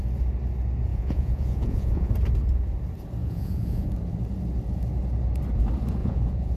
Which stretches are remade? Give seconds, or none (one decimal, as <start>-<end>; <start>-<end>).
0.9-2.1; 3.2-3.9; 6.0-6.6